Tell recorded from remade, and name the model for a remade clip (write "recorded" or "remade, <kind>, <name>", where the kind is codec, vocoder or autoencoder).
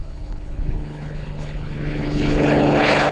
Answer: remade, codec, HILCodec